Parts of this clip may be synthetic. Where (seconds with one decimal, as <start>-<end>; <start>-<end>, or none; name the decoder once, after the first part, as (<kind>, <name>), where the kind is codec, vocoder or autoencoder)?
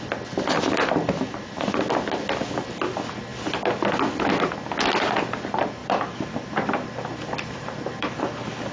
5.8-8.2 (vocoder, BigVGAN v2)